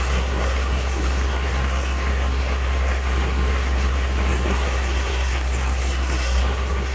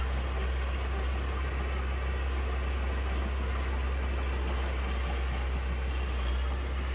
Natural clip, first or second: second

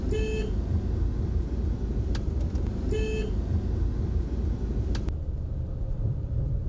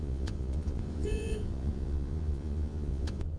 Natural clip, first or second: first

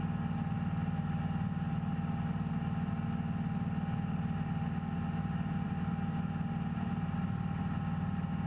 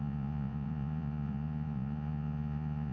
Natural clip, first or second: first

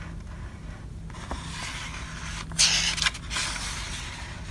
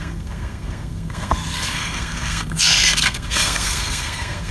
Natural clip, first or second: first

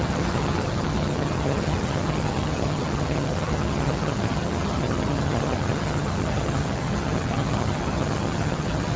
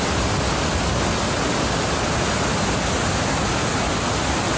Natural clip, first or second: second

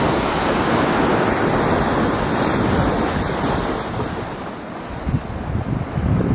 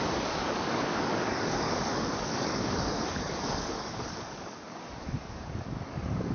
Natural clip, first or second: first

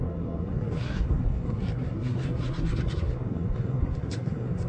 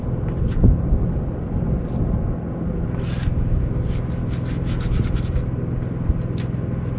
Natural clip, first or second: second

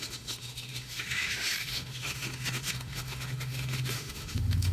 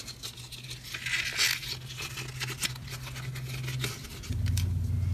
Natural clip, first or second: second